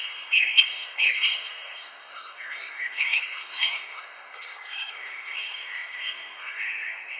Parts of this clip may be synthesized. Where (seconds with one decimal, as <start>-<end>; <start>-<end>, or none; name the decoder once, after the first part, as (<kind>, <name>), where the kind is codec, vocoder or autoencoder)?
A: 0.0-7.2 (codec, SNAC)